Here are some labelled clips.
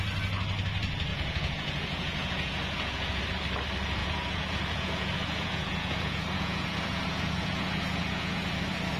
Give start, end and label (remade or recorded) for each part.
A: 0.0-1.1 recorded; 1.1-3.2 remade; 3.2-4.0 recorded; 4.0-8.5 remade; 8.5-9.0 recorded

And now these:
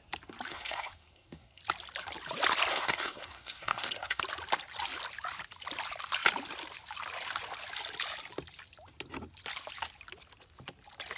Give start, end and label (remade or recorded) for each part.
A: 0.0-0.5 recorded; 0.5-1.6 remade; 1.6-2.7 recorded; 2.7-4.2 remade; 4.2-11.2 recorded

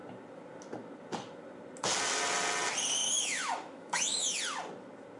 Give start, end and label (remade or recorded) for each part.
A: 0.0-3.0 recorded; 3.0-4.4 remade; 4.4-5.2 recorded

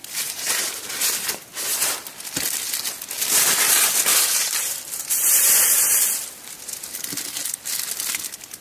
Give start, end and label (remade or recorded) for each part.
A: 0.0-4.1 recorded; 4.1-5.1 remade; 5.1-8.6 recorded

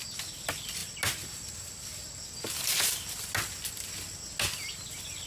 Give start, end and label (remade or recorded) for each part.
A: 0.0-5.3 recorded

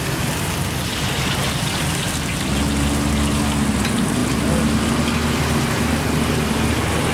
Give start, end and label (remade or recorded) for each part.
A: 0.0-7.1 recorded